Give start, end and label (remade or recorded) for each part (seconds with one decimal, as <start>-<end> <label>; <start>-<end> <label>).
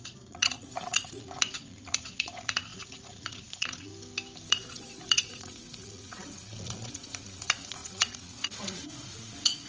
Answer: 0.0-3.9 remade; 3.9-4.5 recorded; 4.5-9.7 remade